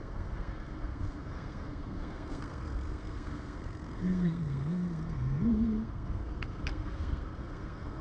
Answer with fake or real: fake